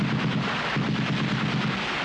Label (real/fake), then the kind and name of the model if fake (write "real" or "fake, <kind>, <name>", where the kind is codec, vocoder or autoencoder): real